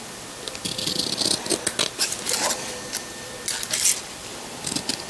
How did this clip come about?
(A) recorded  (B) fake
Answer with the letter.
A